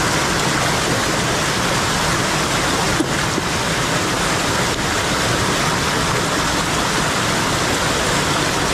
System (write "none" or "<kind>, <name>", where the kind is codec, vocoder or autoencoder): none